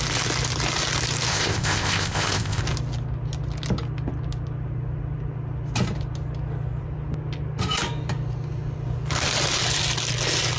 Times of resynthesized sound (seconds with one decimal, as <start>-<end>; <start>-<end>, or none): 1.3-2.6